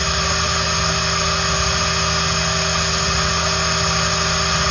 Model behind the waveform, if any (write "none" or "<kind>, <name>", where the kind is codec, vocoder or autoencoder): none